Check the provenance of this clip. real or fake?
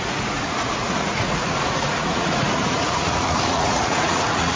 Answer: fake